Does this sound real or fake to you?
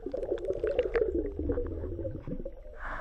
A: real